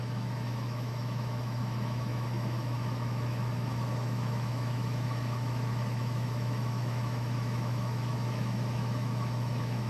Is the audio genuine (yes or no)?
no